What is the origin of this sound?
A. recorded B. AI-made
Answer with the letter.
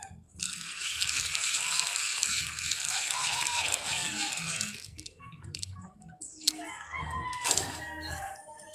B